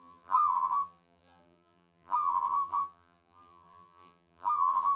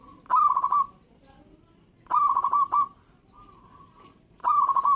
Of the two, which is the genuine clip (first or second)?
second